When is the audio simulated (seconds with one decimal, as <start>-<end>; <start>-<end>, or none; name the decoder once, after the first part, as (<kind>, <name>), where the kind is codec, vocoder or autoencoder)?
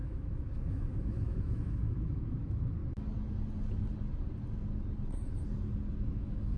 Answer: 0.0-2.8 (autoencoder, DAC-VAE); 6.1-6.6